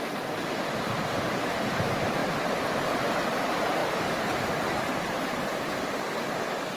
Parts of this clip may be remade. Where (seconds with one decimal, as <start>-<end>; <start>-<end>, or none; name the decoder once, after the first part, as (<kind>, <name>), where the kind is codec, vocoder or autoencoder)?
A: 2.2-3.0 (vocoder, BigVGAN v2); 3.8-5.6